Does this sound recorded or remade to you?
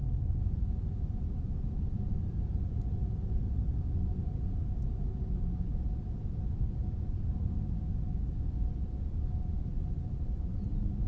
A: recorded